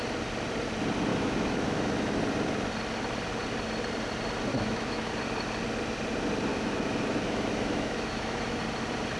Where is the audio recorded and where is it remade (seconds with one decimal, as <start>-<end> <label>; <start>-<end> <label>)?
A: 0.0-1.1 recorded; 1.1-2.2 remade; 2.2-4.5 recorded; 4.5-5.1 remade; 5.1-6.5 recorded; 6.5-8.6 remade; 8.6-9.2 recorded